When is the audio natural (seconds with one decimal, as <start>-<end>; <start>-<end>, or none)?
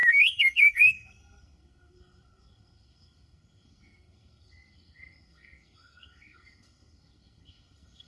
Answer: none